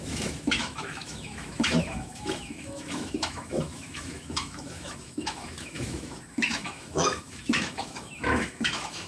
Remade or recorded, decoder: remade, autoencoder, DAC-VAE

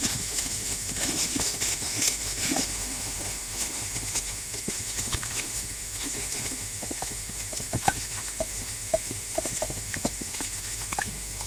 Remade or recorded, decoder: remade, autoencoder, DAC-VAE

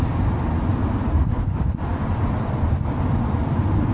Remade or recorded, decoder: recorded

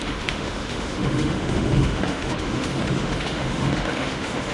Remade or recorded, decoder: remade, autoencoder, DAC-VAE